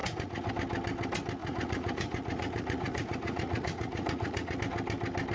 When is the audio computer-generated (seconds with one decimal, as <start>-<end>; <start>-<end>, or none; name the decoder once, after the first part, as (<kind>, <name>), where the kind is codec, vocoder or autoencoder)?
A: 0.0-0.5 (vocoder, Vocos); 1.4-4.6